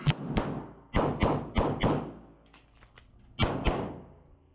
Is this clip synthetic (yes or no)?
no